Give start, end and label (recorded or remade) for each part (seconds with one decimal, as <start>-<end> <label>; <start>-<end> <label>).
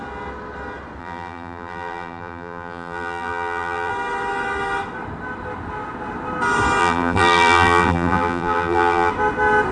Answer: 0.0-1.0 recorded; 1.0-3.9 remade; 3.9-6.8 recorded; 6.8-9.1 remade; 9.1-9.7 recorded